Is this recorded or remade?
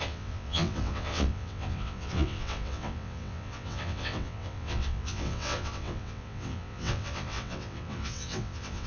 remade